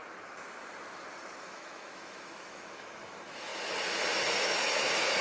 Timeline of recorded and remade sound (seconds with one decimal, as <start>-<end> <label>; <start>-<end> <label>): 0.0-1.4 recorded; 1.4-3.5 remade; 3.5-4.2 recorded; 4.2-5.2 remade